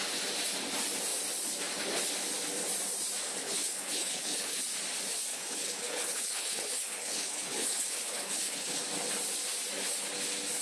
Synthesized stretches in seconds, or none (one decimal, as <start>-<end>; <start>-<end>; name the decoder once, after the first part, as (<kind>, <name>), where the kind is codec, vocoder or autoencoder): 3.4-4.6 (codec, HILCodec); 5.3-8.8